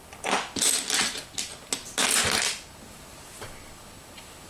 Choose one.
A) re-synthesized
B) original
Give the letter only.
B